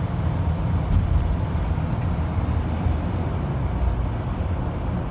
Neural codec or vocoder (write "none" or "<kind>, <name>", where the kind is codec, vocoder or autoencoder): none